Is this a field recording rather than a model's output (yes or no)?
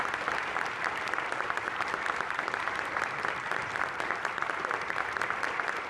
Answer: no